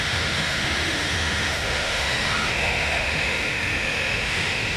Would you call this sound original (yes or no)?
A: no